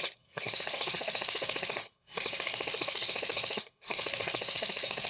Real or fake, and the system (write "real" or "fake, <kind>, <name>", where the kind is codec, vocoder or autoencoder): fake, codec, SNAC